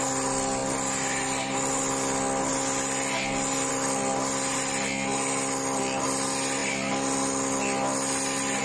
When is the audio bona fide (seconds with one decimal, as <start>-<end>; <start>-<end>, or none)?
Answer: 0.0-8.6